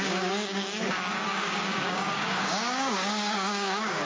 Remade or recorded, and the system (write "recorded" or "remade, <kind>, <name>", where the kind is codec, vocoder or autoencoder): remade, codec, DAC